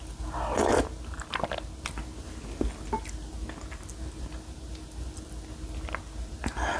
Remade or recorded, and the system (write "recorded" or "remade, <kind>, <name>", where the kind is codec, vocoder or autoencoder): recorded